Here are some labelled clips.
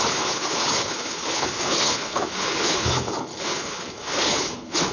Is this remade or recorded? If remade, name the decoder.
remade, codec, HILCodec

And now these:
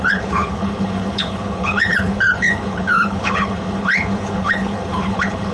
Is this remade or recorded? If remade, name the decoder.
remade, codec, HILCodec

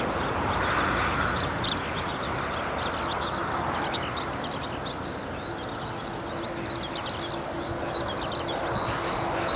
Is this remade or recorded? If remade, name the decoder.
recorded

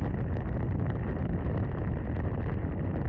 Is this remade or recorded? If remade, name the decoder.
recorded